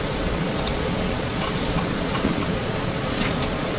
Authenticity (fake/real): fake